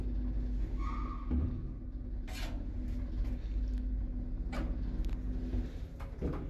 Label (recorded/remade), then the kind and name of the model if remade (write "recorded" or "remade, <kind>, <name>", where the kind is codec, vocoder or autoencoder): recorded